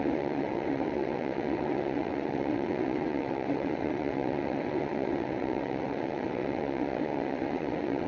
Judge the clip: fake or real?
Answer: fake